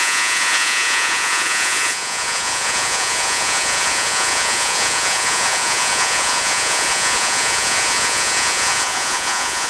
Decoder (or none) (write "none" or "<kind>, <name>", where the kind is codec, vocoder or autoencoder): vocoder, Vocos